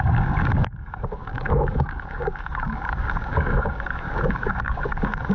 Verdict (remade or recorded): remade